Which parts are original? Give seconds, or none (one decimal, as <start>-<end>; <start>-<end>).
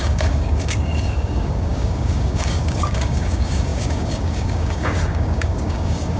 none